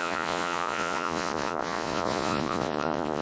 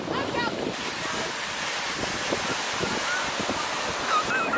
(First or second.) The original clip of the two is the second